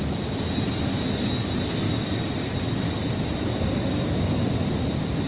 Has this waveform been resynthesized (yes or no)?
no